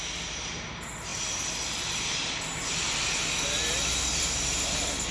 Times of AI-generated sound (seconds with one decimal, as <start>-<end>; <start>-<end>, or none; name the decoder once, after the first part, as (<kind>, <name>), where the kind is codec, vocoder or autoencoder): none